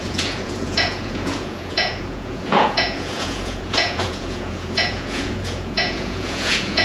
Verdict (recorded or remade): remade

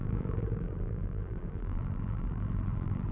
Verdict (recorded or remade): remade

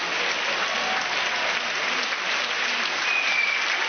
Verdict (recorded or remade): recorded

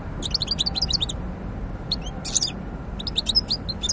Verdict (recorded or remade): recorded